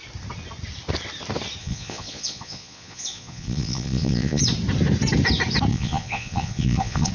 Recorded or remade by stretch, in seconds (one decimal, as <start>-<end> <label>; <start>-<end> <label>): 0.0-1.6 recorded; 1.6-4.4 remade; 4.4-5.7 recorded; 5.7-7.1 remade